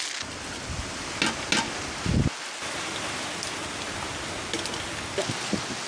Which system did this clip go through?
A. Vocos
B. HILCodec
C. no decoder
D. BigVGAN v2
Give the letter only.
C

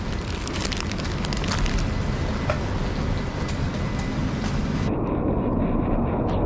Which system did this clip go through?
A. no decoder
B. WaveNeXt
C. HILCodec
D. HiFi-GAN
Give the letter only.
A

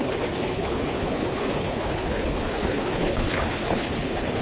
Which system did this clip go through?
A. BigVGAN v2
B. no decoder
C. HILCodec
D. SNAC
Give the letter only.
C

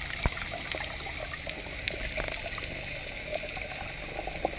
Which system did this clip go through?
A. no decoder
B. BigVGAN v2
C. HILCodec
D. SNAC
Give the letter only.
A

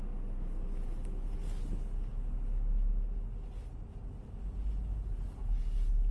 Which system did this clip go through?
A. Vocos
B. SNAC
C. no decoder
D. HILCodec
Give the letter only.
C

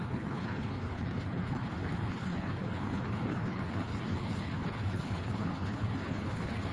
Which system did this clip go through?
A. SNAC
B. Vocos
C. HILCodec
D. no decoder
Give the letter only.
C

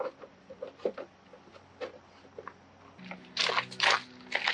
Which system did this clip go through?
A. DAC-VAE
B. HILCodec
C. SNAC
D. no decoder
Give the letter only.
D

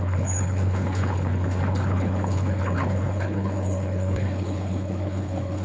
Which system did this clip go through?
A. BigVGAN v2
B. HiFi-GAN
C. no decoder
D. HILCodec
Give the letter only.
D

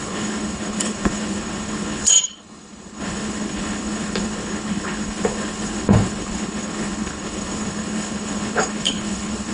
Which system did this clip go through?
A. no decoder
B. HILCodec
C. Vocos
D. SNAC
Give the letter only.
B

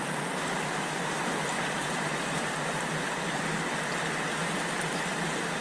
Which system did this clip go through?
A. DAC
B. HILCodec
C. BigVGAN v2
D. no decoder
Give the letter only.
D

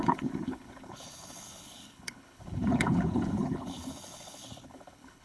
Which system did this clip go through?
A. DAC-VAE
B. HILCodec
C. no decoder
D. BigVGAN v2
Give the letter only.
B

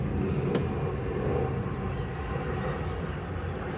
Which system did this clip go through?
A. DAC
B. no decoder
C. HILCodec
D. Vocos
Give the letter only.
B